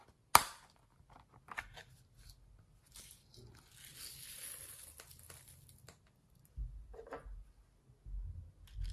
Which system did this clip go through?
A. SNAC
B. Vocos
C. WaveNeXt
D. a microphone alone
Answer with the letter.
D